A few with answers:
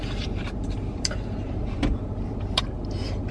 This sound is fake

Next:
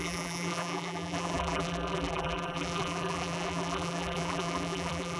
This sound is fake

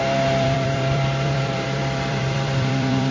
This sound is fake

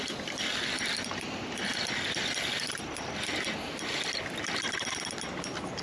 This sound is real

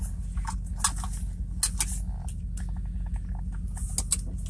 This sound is real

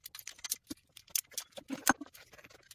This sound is real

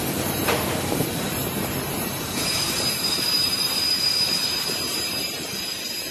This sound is fake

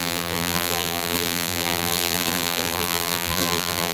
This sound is fake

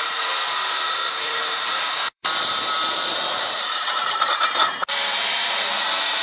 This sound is fake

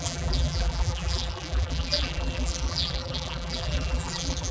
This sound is fake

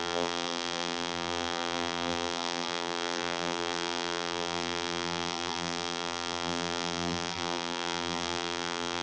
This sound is fake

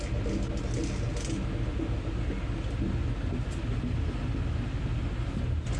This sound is real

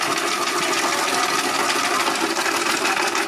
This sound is real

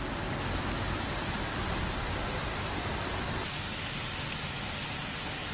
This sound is real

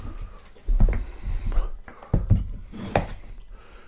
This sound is real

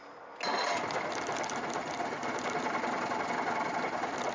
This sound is real